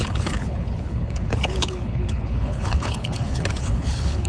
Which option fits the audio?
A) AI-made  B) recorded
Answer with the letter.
A